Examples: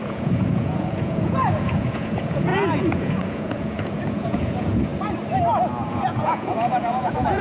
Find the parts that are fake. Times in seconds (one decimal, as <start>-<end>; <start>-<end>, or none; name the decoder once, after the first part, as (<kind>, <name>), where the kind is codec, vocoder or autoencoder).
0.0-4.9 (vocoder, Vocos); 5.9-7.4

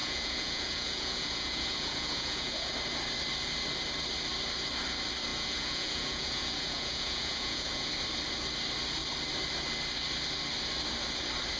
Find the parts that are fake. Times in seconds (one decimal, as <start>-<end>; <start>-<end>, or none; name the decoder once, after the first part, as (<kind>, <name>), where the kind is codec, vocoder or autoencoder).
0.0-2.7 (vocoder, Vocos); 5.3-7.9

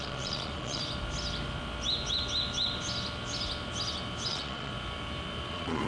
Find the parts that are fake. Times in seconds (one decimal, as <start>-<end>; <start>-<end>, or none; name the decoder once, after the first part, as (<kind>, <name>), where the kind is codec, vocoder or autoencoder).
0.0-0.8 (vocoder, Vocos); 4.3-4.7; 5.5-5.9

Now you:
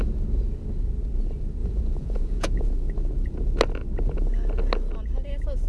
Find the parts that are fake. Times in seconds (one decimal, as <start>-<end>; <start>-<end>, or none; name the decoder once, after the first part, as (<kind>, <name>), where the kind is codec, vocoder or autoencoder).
1.6-2.7 (vocoder, Vocos)

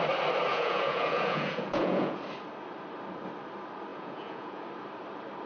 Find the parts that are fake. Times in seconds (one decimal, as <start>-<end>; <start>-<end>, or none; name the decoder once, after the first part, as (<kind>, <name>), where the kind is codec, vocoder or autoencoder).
0.5-2.2 (vocoder, Vocos); 3.9-4.6

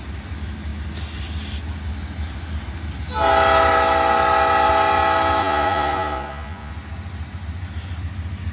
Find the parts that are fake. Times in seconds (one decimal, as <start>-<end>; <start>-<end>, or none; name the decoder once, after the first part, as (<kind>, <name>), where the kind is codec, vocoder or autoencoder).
5.4-6.7 (vocoder, Vocos)

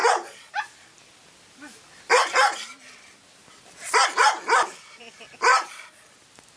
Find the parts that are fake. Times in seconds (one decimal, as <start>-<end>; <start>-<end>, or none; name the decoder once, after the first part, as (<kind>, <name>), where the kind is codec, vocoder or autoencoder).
0.0-0.5 (vocoder, Vocos); 5.5-6.1

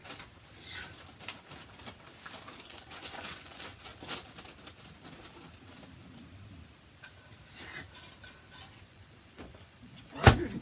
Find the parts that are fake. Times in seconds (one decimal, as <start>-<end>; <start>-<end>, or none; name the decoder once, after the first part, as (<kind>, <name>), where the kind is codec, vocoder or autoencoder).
2.6-3.9 (vocoder, Vocos); 8.8-10.6